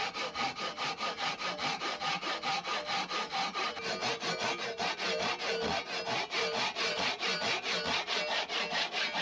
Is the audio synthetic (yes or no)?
no